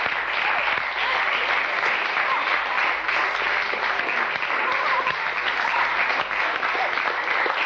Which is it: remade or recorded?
recorded